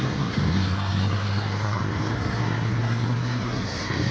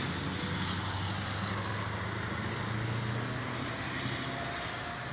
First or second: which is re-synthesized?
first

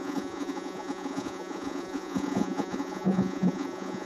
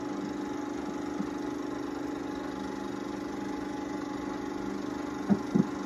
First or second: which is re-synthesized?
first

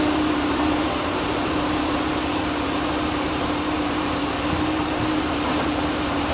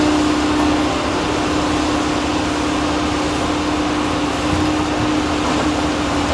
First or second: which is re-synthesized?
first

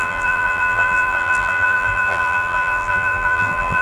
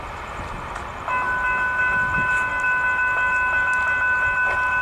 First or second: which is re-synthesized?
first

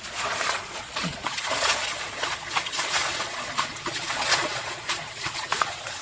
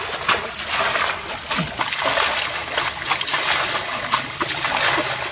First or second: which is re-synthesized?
first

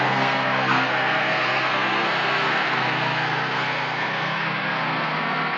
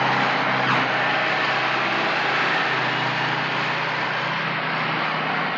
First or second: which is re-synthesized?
first